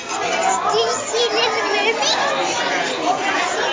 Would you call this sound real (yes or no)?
yes